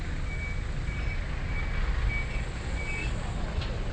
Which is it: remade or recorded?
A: recorded